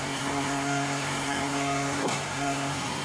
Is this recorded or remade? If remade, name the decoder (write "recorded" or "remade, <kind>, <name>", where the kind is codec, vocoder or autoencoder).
remade, codec, SNAC